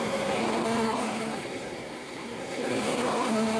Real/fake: fake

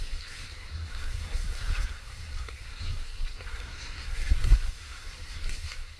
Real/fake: fake